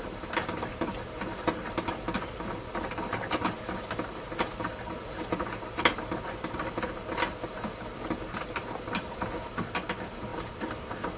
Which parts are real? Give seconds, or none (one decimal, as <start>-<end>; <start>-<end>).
0.0-11.2